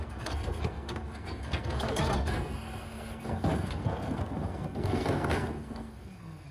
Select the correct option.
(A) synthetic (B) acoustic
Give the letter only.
A